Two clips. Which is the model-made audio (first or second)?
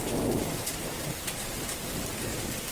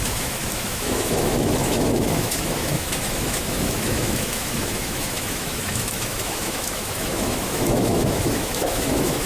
second